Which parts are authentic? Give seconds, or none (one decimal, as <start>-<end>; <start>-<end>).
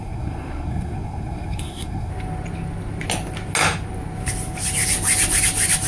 2.1-5.9